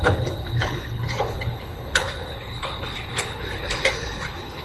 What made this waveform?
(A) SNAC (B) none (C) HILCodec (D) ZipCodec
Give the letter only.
C